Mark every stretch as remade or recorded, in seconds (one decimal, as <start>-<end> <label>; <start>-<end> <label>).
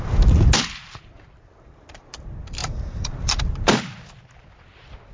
0.0-2.6 recorded; 2.6-3.4 remade; 3.4-5.1 recorded